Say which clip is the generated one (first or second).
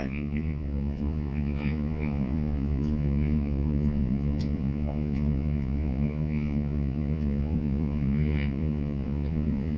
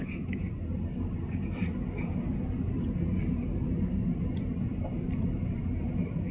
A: first